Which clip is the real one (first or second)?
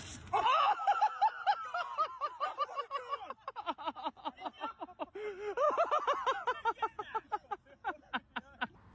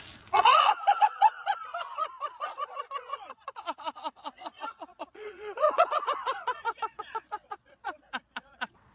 first